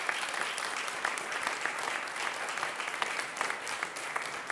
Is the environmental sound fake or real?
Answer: real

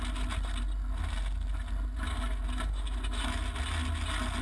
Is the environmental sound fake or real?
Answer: real